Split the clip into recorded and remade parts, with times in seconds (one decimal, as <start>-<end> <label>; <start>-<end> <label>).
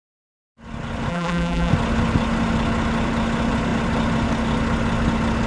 0.0-1.1 recorded; 1.1-1.7 remade; 1.7-5.5 recorded